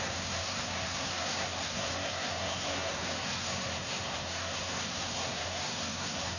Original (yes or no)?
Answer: no